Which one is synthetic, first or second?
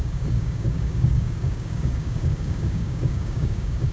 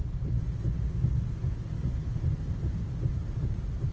first